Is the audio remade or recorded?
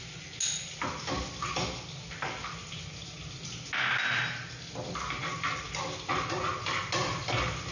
recorded